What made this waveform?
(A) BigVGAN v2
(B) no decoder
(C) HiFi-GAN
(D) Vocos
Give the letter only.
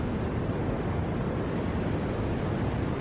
B